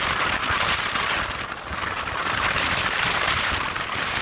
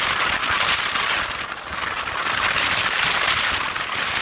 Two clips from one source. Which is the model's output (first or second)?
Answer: first